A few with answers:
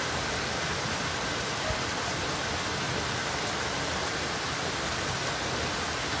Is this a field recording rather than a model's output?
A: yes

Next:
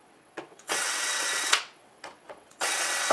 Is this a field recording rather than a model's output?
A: no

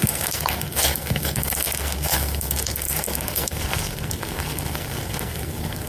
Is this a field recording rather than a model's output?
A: no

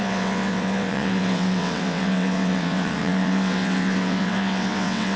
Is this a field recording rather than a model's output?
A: no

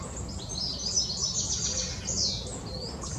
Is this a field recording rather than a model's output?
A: yes